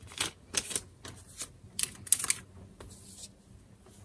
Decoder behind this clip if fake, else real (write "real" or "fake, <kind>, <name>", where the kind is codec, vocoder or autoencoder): real